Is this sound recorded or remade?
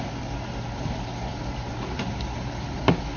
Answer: recorded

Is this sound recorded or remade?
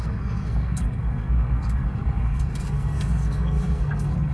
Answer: remade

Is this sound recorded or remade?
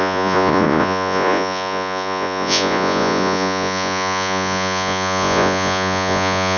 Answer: remade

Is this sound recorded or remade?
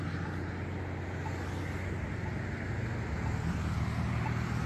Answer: recorded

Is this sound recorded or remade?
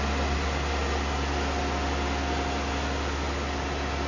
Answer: recorded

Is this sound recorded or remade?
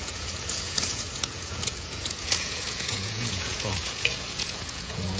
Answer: remade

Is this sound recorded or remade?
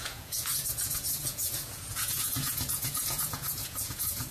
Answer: remade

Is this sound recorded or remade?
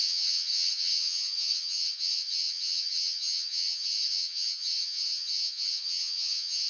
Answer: remade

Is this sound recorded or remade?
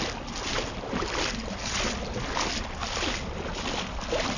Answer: recorded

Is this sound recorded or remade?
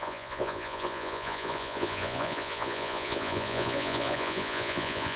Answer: remade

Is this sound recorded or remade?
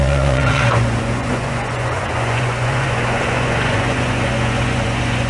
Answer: remade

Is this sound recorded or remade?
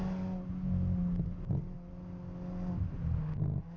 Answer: recorded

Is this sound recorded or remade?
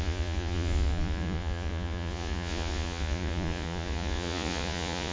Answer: remade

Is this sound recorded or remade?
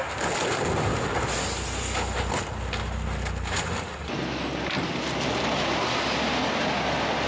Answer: recorded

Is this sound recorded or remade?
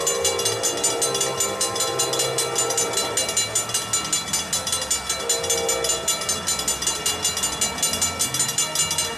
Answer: recorded